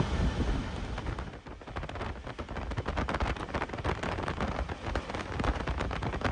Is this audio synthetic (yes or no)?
no